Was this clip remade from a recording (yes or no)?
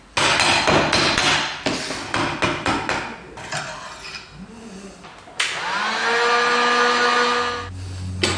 no